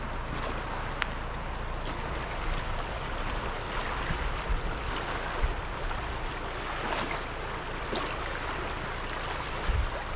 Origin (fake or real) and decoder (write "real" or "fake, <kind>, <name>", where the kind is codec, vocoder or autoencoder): real